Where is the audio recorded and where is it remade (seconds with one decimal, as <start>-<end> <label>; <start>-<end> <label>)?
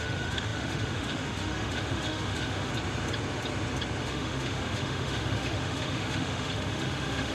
0.0-2.7 remade; 2.7-4.0 recorded; 4.0-7.3 remade